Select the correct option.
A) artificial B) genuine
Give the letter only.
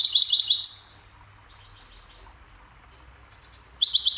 B